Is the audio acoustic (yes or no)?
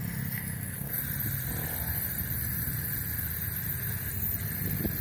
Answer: yes